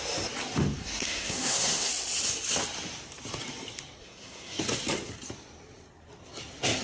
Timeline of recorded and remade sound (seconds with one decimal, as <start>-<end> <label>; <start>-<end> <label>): 0.0-0.8 recorded; 0.8-1.9 remade; 1.9-4.0 recorded; 4.0-4.6 remade; 4.6-6.8 recorded